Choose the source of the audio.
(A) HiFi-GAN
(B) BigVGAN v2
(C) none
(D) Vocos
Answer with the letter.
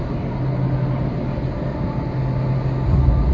C